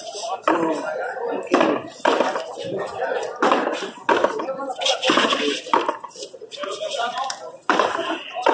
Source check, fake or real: real